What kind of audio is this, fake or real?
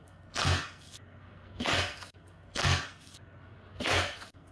fake